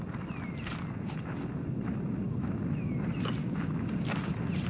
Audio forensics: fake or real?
real